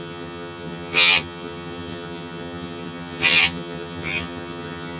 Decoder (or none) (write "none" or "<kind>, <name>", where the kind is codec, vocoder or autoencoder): vocoder, HiFi-GAN